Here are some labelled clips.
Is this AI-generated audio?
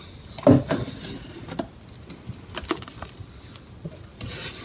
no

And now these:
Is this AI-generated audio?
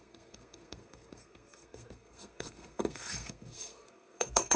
yes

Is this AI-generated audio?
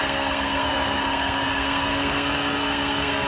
yes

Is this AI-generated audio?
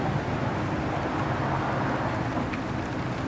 no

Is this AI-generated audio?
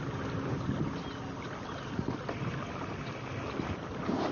no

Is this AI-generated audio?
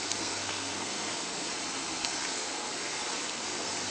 yes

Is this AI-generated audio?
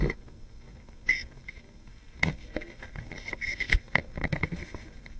yes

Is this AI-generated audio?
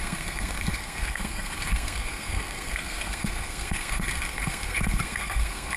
yes